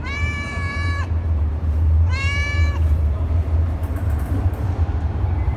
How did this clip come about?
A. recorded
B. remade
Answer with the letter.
B